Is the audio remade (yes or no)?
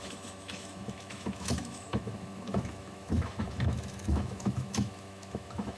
yes